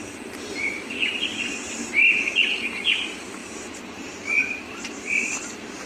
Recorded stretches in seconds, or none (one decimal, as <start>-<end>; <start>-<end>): 0.0-3.4; 5.4-5.9